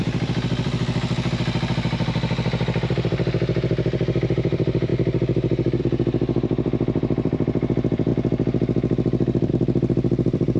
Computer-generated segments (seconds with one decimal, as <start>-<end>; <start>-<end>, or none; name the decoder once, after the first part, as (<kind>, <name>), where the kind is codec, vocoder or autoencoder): 0.0-4.9 (vocoder, BigVGAN v2); 5.8-8.1; 9.5-10.6